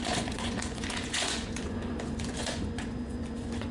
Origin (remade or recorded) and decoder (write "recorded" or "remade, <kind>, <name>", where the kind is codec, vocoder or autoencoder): remade, vocoder, Vocos